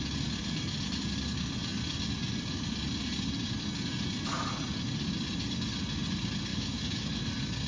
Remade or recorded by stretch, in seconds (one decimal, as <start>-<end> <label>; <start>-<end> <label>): 0.0-6.5 recorded; 6.5-7.2 remade; 7.2-7.7 recorded